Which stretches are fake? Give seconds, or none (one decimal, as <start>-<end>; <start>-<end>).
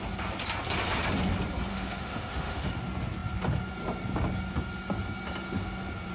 1.7-2.7